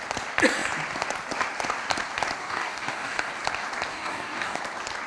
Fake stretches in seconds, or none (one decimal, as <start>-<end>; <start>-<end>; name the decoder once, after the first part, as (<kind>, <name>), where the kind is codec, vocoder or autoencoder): 2.4-3.3 (codec, DAC); 3.9-4.6